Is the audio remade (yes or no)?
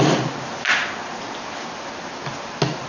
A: no